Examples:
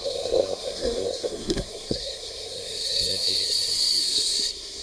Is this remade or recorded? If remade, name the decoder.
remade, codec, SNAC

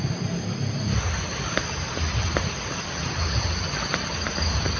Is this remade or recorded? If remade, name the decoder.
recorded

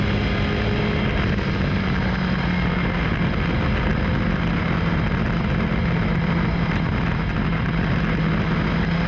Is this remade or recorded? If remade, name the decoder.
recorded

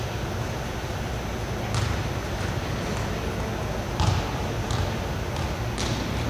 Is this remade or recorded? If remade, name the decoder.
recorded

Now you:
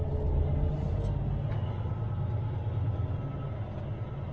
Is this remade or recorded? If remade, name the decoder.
recorded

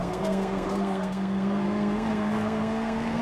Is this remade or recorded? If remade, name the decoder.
remade, codec, SNAC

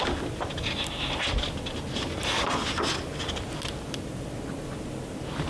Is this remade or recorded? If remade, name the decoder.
recorded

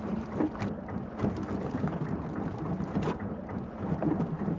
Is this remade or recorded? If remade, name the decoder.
recorded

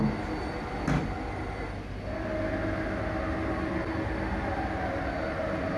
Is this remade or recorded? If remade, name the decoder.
recorded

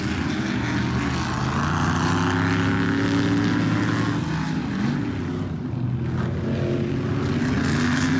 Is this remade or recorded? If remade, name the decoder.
recorded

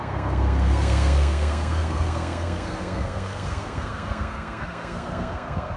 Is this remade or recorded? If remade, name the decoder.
remade, codec, SNAC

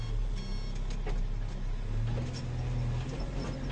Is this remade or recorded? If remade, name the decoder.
recorded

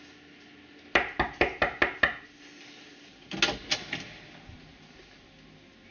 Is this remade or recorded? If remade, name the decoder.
recorded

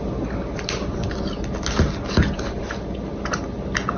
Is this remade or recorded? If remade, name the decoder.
recorded